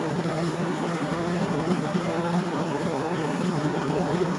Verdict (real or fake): fake